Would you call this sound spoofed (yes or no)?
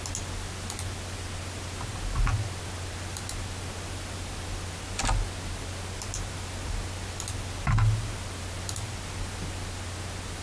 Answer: no